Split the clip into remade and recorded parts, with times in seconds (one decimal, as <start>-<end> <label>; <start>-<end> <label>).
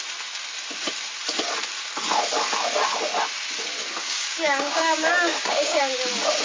0.0-4.0 recorded; 4.0-5.8 remade; 5.8-6.4 recorded